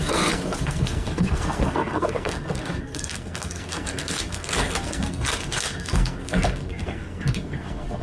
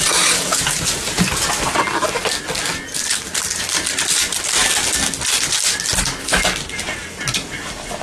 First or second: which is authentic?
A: second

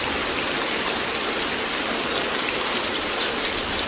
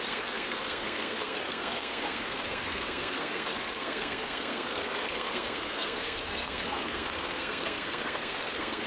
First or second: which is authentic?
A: first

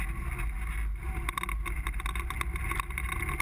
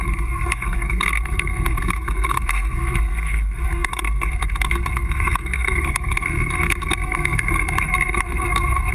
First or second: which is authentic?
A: first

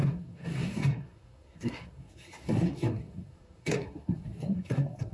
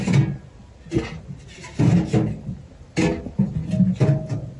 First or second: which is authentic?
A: second